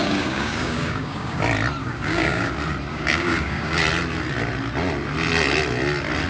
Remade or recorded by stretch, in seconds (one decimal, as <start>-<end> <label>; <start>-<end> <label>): 0.0-1.4 remade; 1.4-1.8 recorded; 1.8-2.5 remade; 2.5-2.9 recorded; 2.9-3.8 remade; 3.8-6.3 recorded